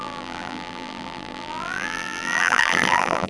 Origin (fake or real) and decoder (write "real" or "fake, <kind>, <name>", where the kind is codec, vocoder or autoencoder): fake, vocoder, BigVGAN v2